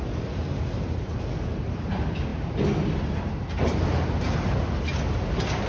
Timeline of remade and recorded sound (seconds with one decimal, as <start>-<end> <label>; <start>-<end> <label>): 0.0-5.7 recorded